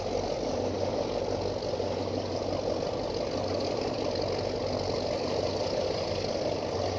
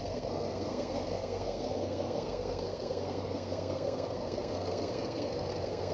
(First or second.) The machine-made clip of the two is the second